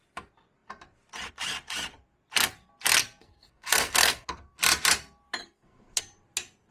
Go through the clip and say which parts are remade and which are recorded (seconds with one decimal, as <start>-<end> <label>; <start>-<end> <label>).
0.0-3.2 recorded; 3.2-4.6 remade; 4.6-5.4 recorded; 5.4-6.0 remade; 6.0-6.7 recorded